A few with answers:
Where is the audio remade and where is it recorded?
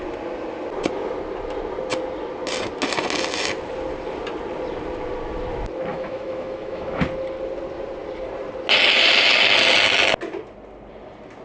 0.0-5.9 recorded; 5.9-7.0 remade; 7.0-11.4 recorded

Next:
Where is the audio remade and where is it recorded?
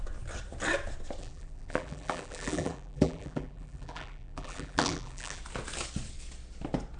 0.0-1.2 recorded; 1.2-5.4 remade; 5.4-7.0 recorded